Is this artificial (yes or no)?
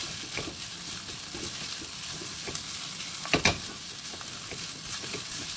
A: no